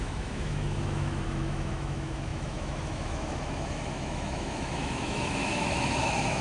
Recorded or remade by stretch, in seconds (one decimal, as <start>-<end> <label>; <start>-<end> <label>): 0.0-6.4 remade